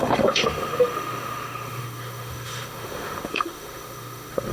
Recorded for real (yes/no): no